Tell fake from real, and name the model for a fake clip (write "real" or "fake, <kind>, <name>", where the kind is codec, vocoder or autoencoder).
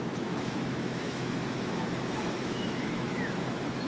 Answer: fake, autoencoder, DAC-VAE